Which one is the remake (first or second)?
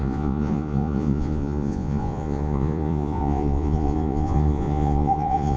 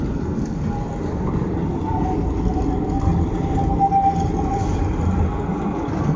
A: first